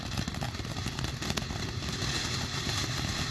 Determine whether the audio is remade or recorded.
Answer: recorded